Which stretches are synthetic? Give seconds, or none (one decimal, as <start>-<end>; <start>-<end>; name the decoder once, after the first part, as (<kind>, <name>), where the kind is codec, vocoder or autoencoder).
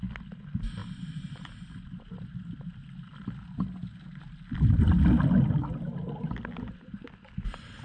none